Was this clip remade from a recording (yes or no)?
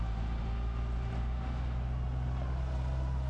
no